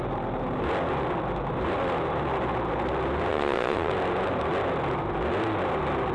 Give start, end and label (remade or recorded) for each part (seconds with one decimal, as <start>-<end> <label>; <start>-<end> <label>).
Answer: 0.0-3.3 recorded; 3.3-3.9 remade; 3.9-6.1 recorded